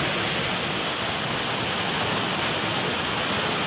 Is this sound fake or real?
real